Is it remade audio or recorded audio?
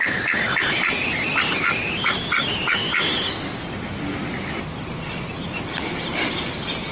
recorded